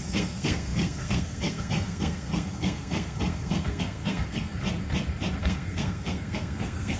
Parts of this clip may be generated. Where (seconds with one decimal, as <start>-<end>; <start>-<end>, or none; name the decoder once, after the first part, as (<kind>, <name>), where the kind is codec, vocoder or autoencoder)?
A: 0.0-4.5 (codec, SNAC); 5.4-7.0